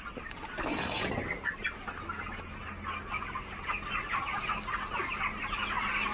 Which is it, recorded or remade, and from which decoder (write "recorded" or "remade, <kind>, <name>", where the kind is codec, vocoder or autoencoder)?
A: recorded